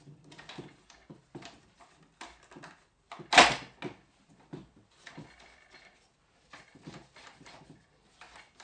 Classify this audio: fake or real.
real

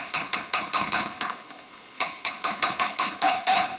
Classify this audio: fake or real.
fake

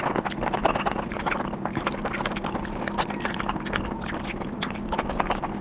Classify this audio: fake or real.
real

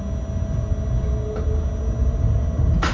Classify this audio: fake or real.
real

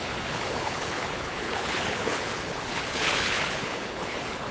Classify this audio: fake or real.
fake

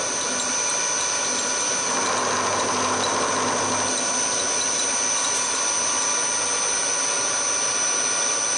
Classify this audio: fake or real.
real